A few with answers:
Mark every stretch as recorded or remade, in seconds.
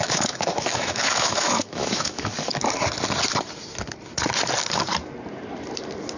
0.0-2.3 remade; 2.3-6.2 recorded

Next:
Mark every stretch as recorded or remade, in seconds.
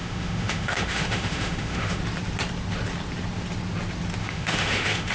0.0-2.0 remade; 2.0-4.2 recorded; 4.2-5.1 remade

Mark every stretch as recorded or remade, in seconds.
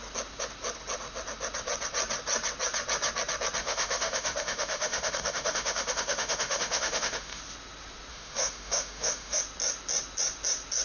0.0-3.6 recorded; 3.6-7.4 remade; 7.4-8.1 recorded; 8.1-9.4 remade; 9.4-10.8 recorded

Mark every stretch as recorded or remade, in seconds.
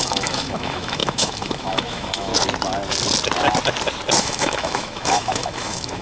0.0-2.3 remade; 2.3-4.2 recorded; 4.2-6.0 remade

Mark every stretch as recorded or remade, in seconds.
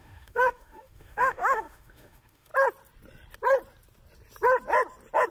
0.0-2.5 remade; 2.5-5.3 recorded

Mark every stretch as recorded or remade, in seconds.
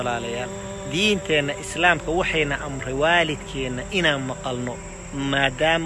0.0-5.9 recorded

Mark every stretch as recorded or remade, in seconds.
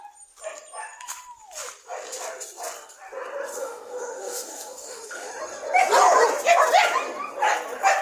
0.0-3.6 recorded; 3.6-5.3 remade; 5.3-8.0 recorded